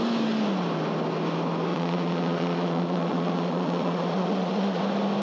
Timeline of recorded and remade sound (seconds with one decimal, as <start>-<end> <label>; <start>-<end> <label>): 0.0-1.7 recorded; 1.7-4.8 remade; 4.8-5.2 recorded